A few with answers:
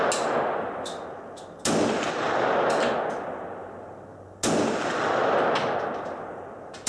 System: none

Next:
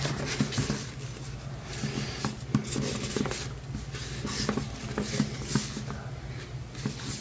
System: none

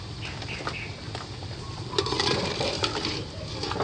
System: none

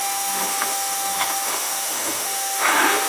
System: autoencoder, DAC-VAE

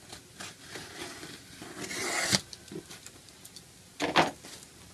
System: none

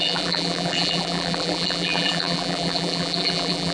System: vocoder, BigVGAN v2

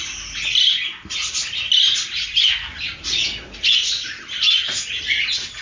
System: none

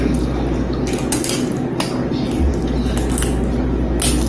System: none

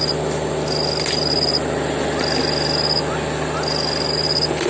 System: none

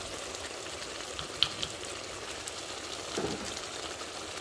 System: none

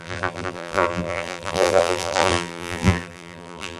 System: vocoder, BigVGAN v2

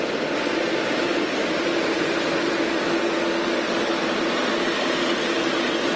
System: none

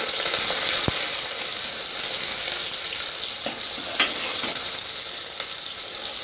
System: none